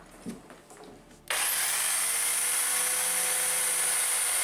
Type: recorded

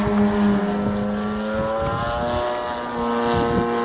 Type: recorded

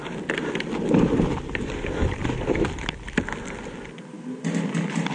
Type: recorded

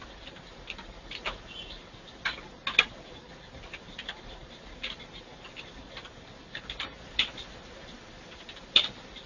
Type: recorded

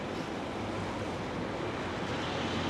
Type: recorded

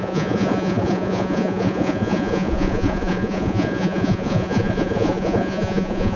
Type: remade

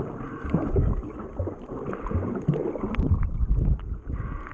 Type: recorded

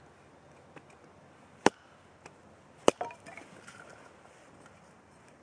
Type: recorded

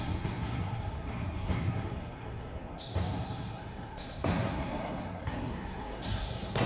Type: remade